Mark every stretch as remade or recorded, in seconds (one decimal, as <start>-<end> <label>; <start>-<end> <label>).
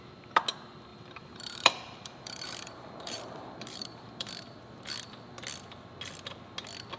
0.0-0.9 recorded; 0.9-4.3 remade; 4.3-7.0 recorded